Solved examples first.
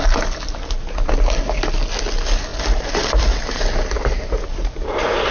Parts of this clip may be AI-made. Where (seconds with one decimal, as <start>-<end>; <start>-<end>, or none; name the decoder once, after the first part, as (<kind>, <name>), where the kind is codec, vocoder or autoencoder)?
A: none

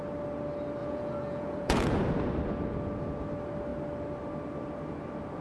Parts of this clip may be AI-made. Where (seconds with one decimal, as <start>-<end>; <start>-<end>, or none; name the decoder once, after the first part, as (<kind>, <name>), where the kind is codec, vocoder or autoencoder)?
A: 0.8-2.0 (vocoder, Vocos)

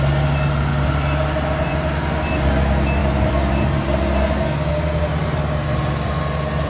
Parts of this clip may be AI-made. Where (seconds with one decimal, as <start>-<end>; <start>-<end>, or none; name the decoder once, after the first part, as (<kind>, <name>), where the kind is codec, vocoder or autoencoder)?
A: none